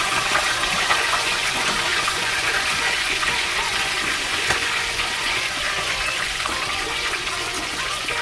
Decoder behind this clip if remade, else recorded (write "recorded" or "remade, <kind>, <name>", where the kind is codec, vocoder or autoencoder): remade, vocoder, Vocos